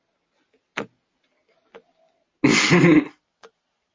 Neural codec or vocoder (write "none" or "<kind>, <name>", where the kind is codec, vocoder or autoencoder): none